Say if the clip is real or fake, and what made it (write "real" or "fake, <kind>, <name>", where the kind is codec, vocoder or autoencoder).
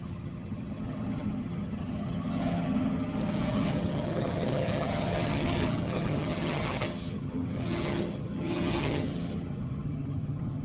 fake, vocoder, HiFi-GAN